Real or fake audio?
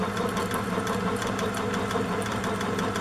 real